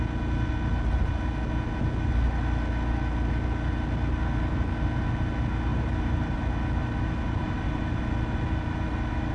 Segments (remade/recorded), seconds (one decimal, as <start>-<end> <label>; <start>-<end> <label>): 0.0-5.7 recorded; 5.7-6.4 remade; 6.4-7.4 recorded; 7.4-8.0 remade; 8.0-9.3 recorded